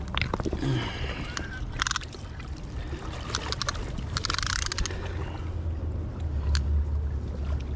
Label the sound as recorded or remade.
recorded